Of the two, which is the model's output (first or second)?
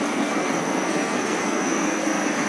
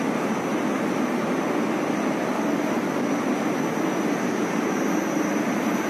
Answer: first